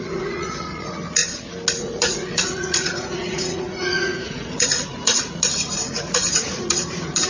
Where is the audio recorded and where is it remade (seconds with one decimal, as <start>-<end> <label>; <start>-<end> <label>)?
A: 0.0-1.2 remade; 1.2-1.8 recorded; 1.8-7.3 remade